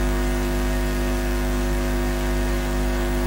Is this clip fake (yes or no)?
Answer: yes